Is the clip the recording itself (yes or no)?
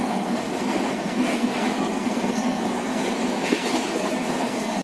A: no